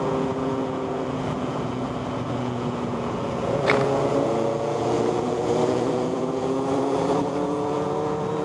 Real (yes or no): no